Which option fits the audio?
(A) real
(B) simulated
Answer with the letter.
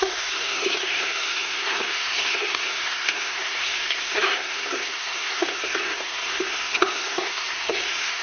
B